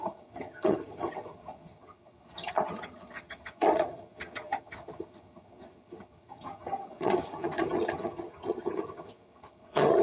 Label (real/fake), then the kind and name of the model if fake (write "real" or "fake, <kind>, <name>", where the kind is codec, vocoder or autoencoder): fake, vocoder, HiFi-GAN